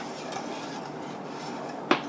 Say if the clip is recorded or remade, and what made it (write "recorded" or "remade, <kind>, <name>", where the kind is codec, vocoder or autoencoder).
recorded